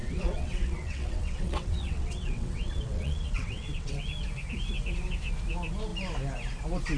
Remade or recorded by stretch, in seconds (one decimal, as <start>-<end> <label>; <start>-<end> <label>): 0.0-4.0 remade; 4.0-7.0 recorded

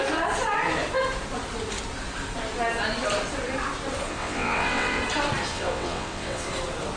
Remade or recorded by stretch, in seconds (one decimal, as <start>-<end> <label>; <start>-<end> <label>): 0.0-4.1 recorded; 4.1-5.0 remade; 5.0-5.5 recorded; 5.5-6.5 remade; 6.5-7.0 recorded

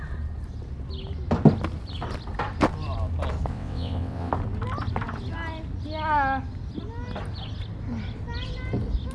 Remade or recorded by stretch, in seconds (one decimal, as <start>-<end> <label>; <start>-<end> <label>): 0.0-3.5 recorded; 3.5-4.3 remade; 4.3-9.1 recorded

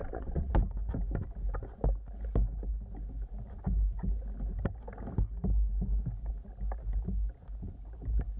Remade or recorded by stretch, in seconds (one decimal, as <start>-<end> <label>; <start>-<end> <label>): 0.0-0.5 remade; 0.5-8.4 recorded